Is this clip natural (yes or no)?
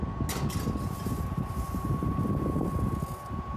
yes